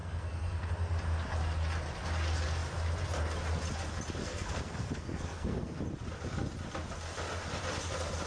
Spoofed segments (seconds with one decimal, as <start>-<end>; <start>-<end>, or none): 0.0-0.7; 4.2-5.8